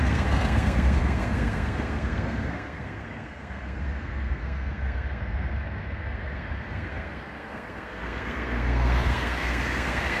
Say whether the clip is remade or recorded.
remade